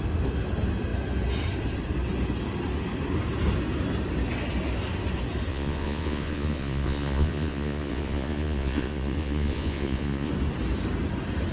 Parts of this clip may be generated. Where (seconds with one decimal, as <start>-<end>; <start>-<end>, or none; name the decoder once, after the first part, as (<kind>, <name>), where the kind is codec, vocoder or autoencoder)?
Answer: 5.5-10.3 (vocoder, Vocos)